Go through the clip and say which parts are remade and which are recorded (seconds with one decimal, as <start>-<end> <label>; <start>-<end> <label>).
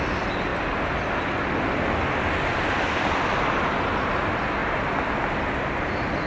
0.0-6.3 recorded